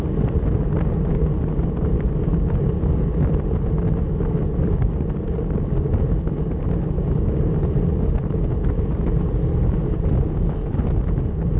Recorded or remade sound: recorded